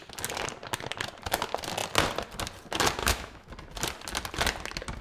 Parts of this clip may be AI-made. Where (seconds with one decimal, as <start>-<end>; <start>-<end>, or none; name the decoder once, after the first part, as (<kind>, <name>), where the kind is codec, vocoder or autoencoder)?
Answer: 3.0-3.5 (autoencoder, DAC-VAE)